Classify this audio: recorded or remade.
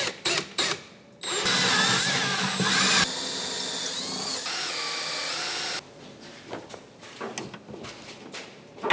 recorded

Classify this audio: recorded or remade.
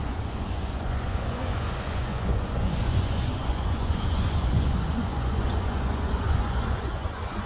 remade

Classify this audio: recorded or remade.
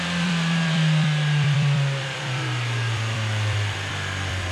remade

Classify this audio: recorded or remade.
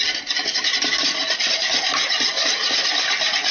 recorded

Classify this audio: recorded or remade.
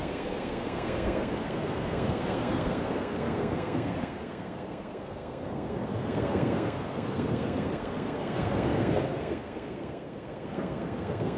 remade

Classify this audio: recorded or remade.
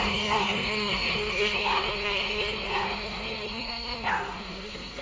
remade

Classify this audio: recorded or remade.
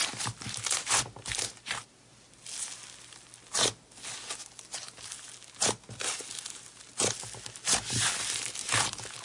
recorded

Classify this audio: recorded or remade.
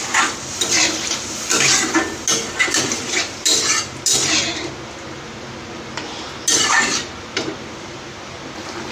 recorded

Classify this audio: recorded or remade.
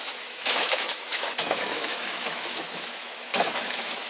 remade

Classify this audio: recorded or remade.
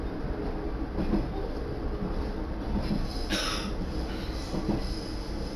recorded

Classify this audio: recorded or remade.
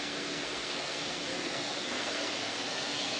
remade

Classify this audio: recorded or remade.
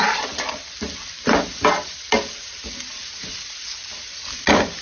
recorded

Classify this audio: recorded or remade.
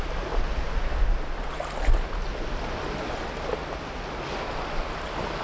recorded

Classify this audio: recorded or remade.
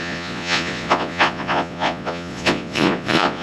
remade